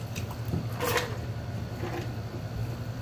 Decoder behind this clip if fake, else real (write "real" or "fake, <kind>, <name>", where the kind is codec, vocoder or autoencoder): real